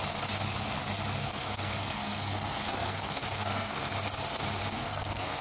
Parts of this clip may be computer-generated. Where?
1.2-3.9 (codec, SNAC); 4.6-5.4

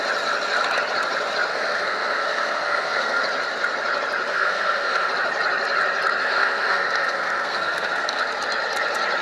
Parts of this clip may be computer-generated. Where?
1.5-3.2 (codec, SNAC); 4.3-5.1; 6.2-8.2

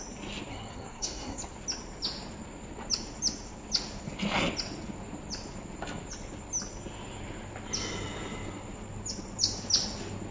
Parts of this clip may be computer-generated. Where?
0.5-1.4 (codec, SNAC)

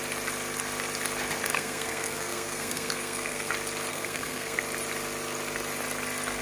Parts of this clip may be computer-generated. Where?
1.5-3.5 (codec, SNAC); 3.9-4.6

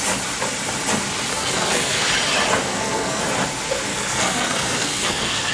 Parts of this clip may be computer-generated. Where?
1.3-2.1 (codec, SNAC); 2.6-3.2; 3.9-5.5